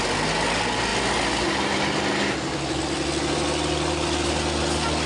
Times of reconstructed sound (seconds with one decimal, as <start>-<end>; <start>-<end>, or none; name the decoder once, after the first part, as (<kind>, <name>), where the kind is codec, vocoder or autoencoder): none